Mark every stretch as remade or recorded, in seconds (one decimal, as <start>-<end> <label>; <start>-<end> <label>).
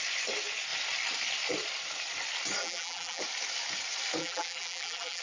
0.0-2.6 recorded; 2.6-3.2 remade; 3.2-4.2 recorded; 4.2-5.2 remade